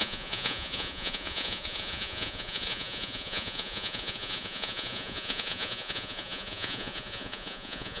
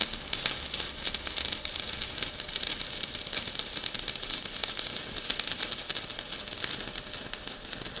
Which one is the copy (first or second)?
first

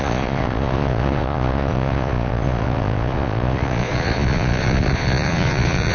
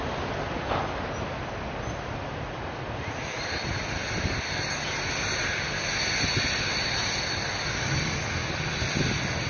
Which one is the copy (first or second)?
first